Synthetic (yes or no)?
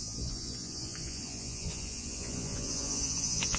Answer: yes